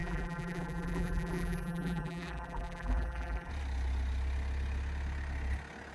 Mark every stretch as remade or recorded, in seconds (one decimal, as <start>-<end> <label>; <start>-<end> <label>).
0.0-3.5 remade; 3.5-5.9 recorded